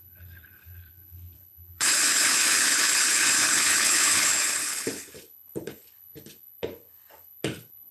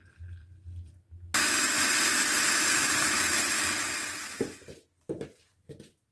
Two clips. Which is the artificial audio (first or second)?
first